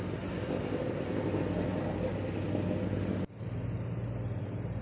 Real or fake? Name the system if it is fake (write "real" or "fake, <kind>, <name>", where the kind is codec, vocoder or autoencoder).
real